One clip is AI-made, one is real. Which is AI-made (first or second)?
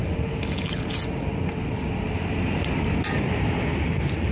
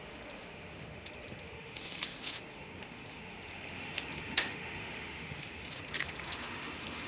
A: second